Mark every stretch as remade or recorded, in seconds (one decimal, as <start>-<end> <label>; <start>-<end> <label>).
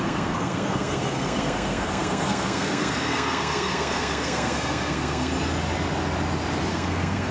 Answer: 0.0-5.3 remade; 5.3-6.7 recorded; 6.7-7.3 remade